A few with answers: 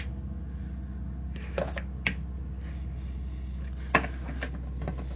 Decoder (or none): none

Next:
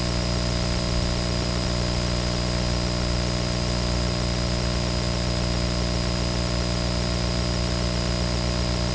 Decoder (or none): none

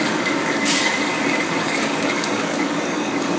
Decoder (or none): codec, DAC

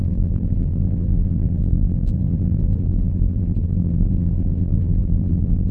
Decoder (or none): vocoder, BigVGAN v2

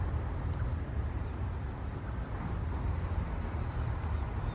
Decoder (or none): none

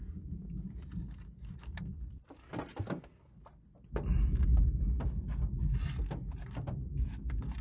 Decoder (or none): none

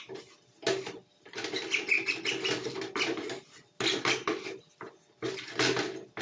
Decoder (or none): none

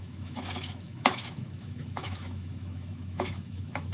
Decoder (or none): autoencoder, DAC-VAE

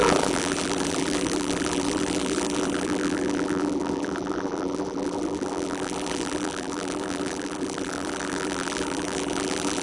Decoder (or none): vocoder, BigVGAN v2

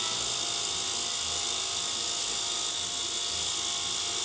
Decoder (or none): none